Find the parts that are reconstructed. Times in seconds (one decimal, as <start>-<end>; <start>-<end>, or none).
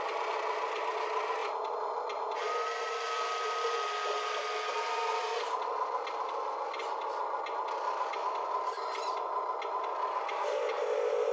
none